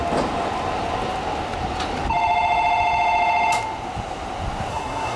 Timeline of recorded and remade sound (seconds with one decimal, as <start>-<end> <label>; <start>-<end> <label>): 0.0-4.7 recorded; 4.7-5.2 remade